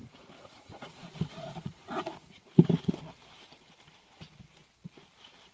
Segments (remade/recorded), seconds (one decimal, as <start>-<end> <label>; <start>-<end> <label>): 0.0-2.9 remade; 2.9-5.5 recorded